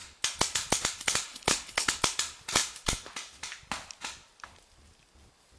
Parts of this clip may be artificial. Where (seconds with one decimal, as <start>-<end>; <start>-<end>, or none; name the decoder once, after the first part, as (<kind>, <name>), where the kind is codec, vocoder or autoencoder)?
1.3-2.0 (codec, HILCodec)

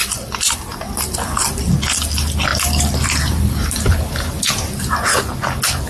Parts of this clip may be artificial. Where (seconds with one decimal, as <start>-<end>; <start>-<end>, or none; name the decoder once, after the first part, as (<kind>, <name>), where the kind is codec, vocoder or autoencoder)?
0.0-1.7 (vocoder, BigVGAN v2); 2.5-4.9

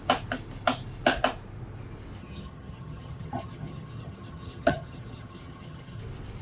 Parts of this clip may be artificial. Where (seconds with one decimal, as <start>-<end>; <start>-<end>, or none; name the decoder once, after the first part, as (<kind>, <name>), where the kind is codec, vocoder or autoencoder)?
2.2-6.0 (vocoder, HiFi-GAN)

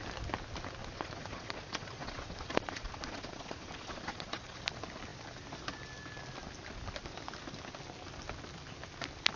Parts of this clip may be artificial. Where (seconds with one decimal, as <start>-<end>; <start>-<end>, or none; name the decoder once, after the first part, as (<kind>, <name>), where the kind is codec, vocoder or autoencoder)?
0.8-4.6 (vocoder, Vocos)

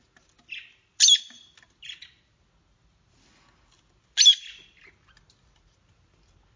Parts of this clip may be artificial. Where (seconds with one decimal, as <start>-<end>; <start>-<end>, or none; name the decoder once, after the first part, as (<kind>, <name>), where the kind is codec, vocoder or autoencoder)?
none

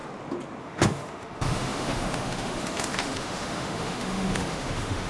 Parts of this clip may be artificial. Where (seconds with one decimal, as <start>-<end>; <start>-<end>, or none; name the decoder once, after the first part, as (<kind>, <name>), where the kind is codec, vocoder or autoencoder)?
0.6-5.1 (autoencoder, DAC-VAE)

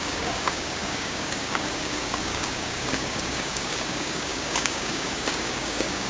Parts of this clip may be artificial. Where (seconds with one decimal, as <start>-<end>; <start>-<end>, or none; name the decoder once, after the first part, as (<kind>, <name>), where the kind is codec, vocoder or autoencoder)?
0.0-6.1 (codec, DAC)